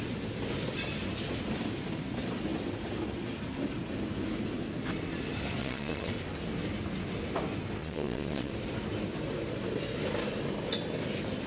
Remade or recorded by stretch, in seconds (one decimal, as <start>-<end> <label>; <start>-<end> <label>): 0.0-5.6 recorded; 5.6-6.1 remade; 6.1-7.8 recorded; 7.8-8.5 remade; 8.5-11.5 recorded